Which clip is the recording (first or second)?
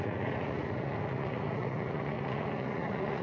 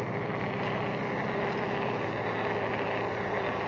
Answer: second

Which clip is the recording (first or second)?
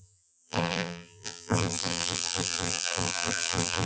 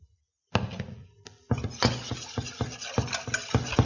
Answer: second